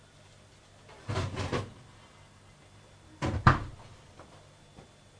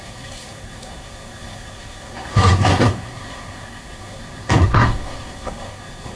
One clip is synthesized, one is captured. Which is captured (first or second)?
first